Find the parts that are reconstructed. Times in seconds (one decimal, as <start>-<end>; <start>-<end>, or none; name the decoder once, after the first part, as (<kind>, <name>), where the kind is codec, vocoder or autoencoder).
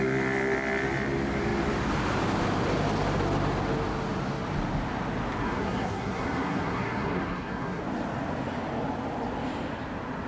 5.4-7.8 (codec, SNAC)